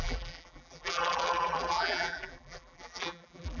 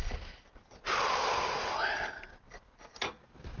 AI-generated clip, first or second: first